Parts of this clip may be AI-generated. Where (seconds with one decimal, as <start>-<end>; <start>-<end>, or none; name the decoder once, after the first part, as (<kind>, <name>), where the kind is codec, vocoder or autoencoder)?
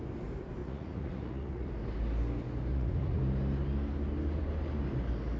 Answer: 0.6-1.7 (vocoder, Vocos); 2.7-3.2